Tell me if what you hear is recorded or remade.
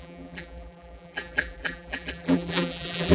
remade